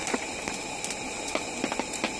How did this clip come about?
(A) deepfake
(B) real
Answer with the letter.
B